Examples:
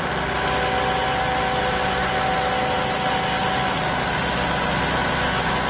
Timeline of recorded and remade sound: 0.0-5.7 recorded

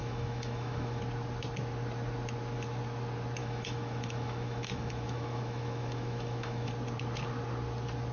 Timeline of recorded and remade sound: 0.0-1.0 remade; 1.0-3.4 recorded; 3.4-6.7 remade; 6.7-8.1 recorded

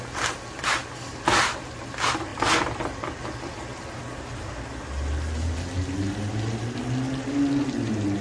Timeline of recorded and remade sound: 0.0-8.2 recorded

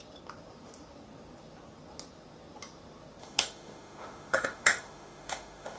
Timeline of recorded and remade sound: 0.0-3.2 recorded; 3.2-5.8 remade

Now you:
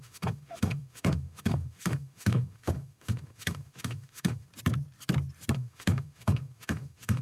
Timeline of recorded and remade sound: 0.0-4.5 remade; 4.5-5.5 recorded; 5.5-7.2 remade

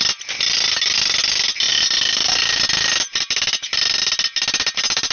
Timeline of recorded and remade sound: 0.0-5.1 recorded

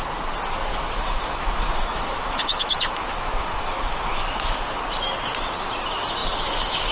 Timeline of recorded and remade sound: 0.0-0.7 recorded; 0.7-4.8 remade; 4.8-6.2 recorded; 6.2-6.9 remade